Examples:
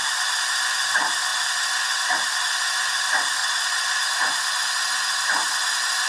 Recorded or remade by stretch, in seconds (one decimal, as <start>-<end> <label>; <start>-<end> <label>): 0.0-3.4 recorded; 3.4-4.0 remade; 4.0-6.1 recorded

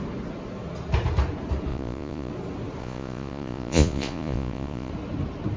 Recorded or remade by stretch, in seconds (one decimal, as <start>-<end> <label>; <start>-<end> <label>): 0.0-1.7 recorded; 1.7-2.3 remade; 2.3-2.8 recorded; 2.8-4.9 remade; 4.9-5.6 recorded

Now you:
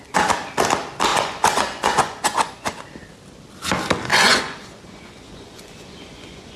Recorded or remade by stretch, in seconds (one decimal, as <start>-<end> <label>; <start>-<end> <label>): 0.0-1.1 recorded; 1.1-2.8 remade; 2.8-4.1 recorded; 4.1-6.6 remade

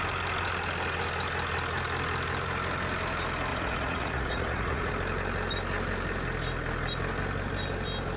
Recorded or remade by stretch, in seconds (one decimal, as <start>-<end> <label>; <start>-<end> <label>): 0.0-3.5 recorded; 3.5-4.9 remade; 4.9-8.2 recorded

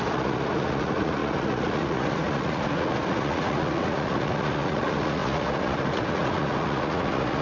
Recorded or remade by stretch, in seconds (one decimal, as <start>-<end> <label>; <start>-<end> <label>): 0.0-7.4 remade

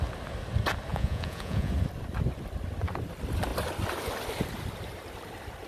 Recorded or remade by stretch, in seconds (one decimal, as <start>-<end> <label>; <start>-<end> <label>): 0.0-0.9 recorded; 0.9-1.7 remade; 1.7-5.7 recorded

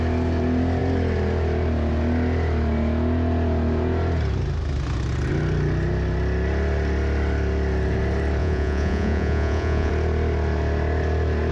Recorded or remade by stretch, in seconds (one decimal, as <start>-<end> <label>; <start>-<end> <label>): 0.0-8.4 recorded; 8.4-9.9 remade; 9.9-11.5 recorded

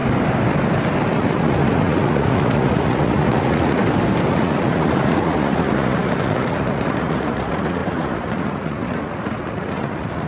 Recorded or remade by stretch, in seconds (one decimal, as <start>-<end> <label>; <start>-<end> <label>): 0.0-1.1 recorded; 1.1-3.8 remade; 3.8-4.3 recorded; 4.3-10.3 remade